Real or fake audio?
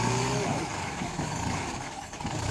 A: fake